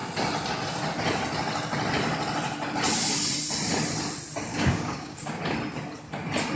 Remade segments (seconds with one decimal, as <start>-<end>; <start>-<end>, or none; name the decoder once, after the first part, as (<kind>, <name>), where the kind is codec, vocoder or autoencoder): 4.5-5.4 (codec, DAC)